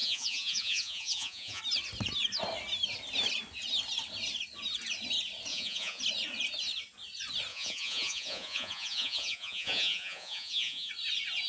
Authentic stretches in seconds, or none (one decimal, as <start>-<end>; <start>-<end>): 1.6-5.5; 6.0-7.5; 10.9-11.5